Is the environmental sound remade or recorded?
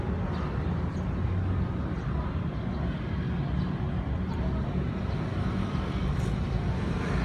recorded